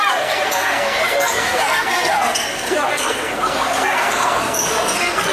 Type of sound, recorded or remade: remade